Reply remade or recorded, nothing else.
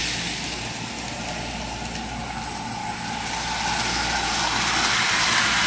recorded